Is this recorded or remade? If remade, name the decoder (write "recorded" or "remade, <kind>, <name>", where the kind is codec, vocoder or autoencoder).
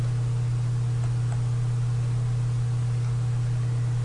recorded